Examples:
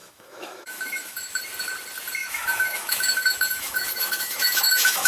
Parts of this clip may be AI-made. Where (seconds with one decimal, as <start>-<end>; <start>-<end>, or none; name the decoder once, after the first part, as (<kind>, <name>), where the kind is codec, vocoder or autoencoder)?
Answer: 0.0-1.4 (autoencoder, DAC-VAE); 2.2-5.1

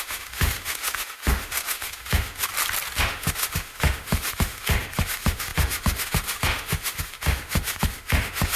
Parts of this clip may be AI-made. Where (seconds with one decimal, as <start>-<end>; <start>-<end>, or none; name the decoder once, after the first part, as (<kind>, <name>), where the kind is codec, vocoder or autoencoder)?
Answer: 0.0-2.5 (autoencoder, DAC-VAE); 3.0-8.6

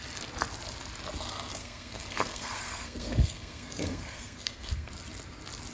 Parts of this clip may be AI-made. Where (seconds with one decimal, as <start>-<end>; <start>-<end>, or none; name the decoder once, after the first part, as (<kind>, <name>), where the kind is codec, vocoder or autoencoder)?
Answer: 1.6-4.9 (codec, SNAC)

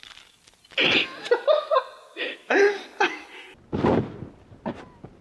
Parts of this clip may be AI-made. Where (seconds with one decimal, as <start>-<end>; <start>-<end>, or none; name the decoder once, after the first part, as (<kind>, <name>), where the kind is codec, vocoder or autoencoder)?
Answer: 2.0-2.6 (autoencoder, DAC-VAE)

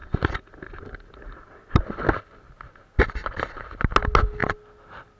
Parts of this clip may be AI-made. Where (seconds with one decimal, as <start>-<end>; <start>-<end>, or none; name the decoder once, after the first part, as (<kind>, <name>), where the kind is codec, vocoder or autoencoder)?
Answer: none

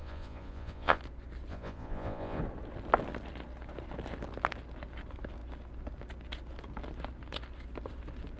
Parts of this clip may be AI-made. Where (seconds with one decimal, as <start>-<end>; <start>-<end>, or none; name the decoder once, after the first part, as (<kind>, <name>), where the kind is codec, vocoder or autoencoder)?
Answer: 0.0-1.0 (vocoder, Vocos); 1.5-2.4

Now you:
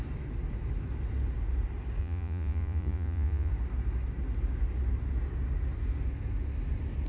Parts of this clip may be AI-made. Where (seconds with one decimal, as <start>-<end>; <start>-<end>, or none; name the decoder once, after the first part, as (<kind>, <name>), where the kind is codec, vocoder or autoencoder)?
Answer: 2.0-3.5 (vocoder, Vocos)